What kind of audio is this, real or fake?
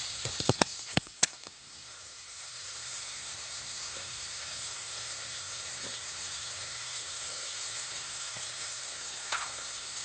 fake